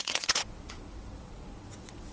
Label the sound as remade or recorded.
remade